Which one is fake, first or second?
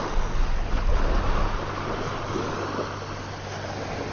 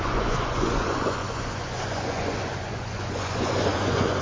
second